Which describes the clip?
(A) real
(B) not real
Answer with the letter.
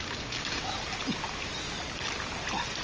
A